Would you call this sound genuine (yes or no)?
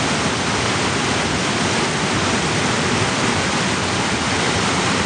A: yes